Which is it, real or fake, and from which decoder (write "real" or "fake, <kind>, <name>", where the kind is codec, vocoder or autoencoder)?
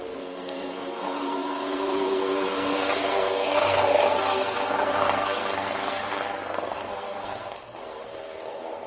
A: fake, codec, SNAC